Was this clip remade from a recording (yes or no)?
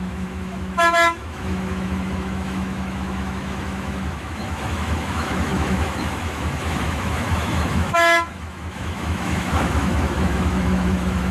yes